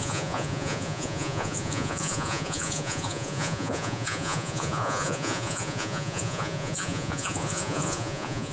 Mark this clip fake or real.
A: fake